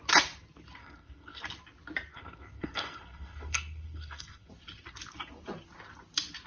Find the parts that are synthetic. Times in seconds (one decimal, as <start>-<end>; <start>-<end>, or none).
0.8-1.4; 2.1-4.5